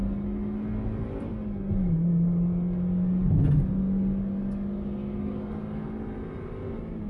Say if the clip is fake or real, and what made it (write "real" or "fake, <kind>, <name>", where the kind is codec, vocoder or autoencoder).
real